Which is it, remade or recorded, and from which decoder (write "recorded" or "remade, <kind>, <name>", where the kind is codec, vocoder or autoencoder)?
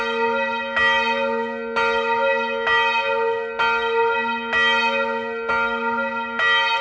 recorded